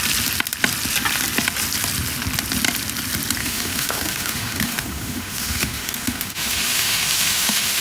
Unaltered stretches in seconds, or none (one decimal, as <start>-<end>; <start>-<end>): 0.0-3.4